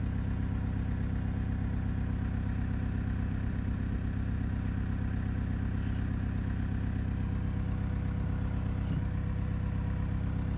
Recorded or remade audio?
recorded